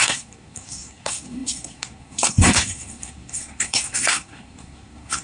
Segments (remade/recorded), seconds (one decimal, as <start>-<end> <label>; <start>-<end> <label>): 0.0-5.2 remade